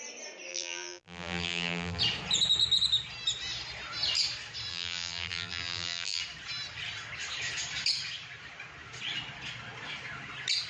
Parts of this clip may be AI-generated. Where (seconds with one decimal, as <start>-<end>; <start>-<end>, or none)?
0.5-2.0; 4.7-6.2